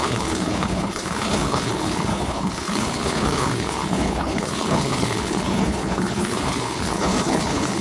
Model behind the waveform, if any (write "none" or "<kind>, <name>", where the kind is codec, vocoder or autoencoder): codec, HILCodec